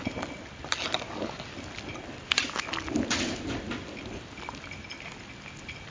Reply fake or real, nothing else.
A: real